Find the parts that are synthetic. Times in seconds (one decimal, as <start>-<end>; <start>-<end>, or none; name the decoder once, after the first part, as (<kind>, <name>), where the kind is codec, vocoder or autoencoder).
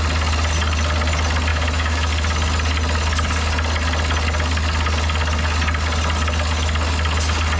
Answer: 1.5-2.1 (autoencoder, DAC-VAE)